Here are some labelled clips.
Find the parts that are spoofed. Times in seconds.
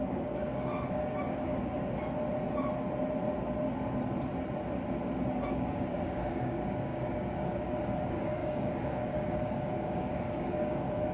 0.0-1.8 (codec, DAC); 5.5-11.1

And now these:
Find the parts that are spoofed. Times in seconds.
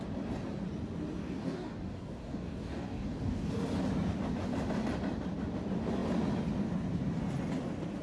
1.2-3.5 (codec, DAC)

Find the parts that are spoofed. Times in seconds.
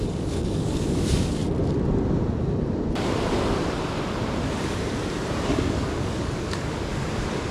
0.0-1.4 (codec, DAC); 5.3-7.5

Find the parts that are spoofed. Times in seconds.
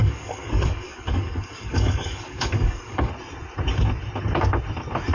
0.0-3.1 (codec, DAC)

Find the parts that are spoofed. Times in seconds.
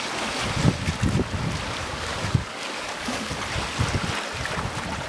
1.8-3.4 (codec, DAC)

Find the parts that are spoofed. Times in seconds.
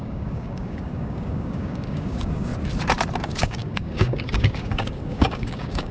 0.0-2.5 (codec, DAC); 3.2-5.9